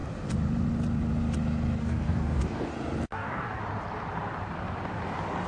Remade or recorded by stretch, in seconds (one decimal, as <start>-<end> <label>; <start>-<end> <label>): 0.0-1.8 recorded; 1.8-2.7 remade; 2.7-3.1 recorded; 3.1-3.6 remade; 3.6-5.5 recorded